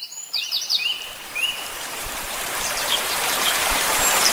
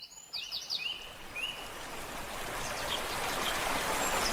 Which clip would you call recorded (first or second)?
second